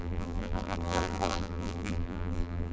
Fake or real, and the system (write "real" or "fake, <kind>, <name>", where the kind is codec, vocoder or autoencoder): fake, vocoder, BigVGAN v2